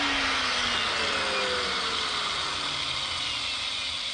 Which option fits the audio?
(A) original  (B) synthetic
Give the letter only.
A